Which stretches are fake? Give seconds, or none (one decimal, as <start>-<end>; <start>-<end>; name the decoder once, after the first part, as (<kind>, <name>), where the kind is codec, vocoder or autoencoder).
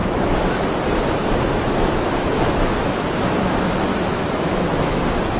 0.0-0.7 (autoencoder, DAC-VAE); 1.2-3.1; 3.9-5.0